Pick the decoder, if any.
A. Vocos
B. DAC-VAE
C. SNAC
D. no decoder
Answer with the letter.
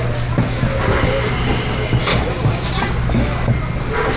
D